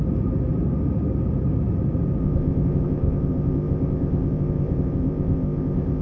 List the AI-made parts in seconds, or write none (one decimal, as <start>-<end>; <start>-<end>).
2.2-6.0